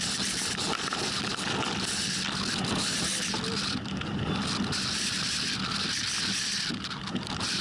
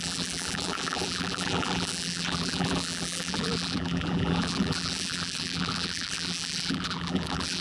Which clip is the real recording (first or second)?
first